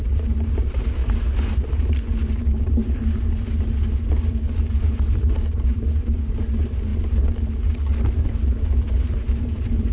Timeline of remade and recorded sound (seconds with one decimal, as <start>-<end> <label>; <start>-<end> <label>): 0.0-1.0 remade; 1.0-4.9 recorded; 4.9-6.9 remade; 6.9-9.0 recorded; 9.0-9.9 remade

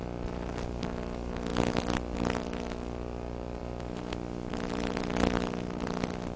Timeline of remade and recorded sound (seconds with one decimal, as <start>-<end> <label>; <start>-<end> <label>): 0.0-3.6 remade; 3.6-4.5 recorded; 4.5-6.4 remade

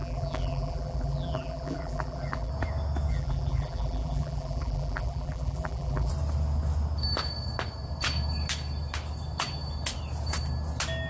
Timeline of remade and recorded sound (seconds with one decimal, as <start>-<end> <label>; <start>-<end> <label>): 0.0-2.5 remade; 2.5-3.1 recorded; 3.1-6.1 remade; 6.1-11.1 recorded

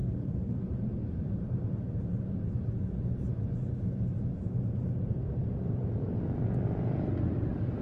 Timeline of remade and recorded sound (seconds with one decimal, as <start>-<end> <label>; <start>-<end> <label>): 0.0-1.7 remade; 1.7-5.4 recorded; 5.4-7.8 remade

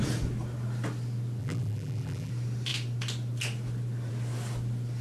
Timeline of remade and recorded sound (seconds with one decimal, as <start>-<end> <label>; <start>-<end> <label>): 0.0-1.4 recorded; 1.4-2.3 remade; 2.3-5.0 recorded

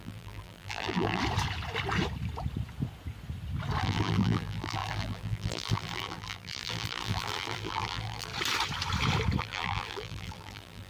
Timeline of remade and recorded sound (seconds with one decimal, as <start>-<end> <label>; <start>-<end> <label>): 0.0-1.2 remade; 1.2-3.8 recorded; 3.8-8.3 remade; 8.3-9.4 recorded; 9.4-10.9 remade